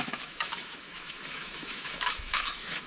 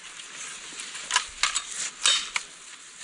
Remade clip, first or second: first